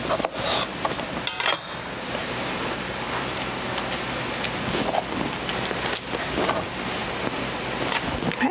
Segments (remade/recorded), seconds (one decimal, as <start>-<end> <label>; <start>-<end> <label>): 0.0-2.2 recorded; 2.2-3.4 remade; 3.4-8.5 recorded